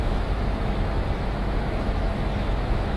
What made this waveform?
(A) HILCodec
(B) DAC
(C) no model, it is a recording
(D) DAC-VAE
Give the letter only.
D